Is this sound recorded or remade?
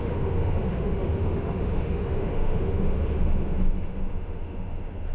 remade